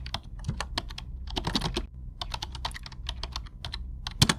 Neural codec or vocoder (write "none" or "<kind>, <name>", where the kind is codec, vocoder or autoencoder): none